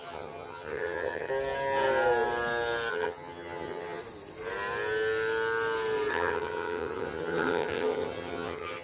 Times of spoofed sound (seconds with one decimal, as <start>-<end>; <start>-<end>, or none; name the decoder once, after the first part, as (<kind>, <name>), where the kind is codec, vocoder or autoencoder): 0.0-1.3 (vocoder, HiFi-GAN); 2.9-4.0; 6.1-8.8